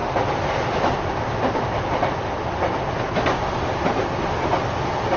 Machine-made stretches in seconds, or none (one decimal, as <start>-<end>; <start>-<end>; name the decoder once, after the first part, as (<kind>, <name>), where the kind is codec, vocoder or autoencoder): none

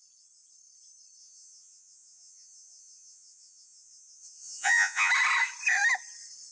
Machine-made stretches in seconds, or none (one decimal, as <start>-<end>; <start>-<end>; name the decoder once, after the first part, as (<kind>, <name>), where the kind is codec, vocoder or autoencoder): 1.2-5.1 (vocoder, Vocos)

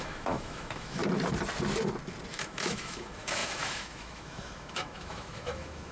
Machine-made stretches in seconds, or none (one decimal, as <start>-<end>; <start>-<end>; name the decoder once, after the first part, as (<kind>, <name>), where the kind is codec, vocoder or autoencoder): 0.0-1.0 (autoencoder, DAC-VAE); 2.3-5.9

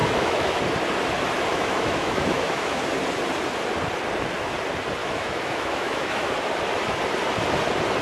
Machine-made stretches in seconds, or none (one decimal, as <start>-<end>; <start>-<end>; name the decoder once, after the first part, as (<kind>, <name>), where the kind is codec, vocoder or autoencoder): 0.0-0.6 (autoencoder, DAC-VAE); 1.5-2.8; 5.0-6.3

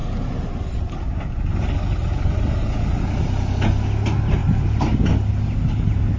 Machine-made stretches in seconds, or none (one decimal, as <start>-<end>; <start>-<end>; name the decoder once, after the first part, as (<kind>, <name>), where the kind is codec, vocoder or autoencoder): none

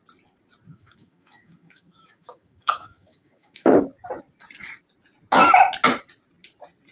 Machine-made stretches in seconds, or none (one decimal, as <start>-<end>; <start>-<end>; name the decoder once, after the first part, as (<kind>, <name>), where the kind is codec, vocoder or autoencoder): 0.7-3.8 (autoencoder, DAC-VAE)

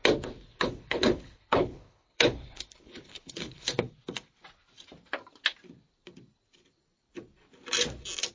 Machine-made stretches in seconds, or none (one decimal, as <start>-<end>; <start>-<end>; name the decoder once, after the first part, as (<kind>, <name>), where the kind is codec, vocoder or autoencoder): 0.5-3.9 (codec, HILCodec)

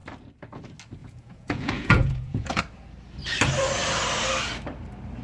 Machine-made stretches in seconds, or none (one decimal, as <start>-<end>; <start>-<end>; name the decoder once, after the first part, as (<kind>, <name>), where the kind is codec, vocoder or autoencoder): 1.0-2.6 (vocoder, Vocos)